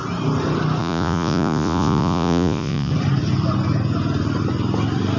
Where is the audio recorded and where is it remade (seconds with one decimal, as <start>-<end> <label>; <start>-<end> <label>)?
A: 0.0-0.8 recorded; 0.8-2.9 remade; 2.9-5.2 recorded